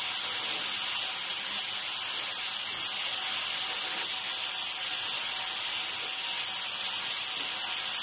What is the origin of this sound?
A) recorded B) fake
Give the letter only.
A